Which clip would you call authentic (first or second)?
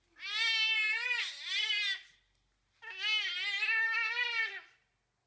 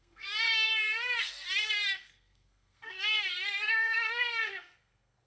first